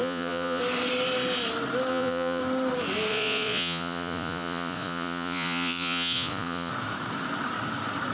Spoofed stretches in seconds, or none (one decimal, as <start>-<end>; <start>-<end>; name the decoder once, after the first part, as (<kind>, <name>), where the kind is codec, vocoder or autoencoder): 0.0-0.6 (vocoder, Vocos); 1.9-2.4; 3.1-6.7